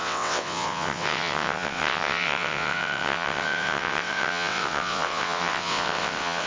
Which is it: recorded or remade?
remade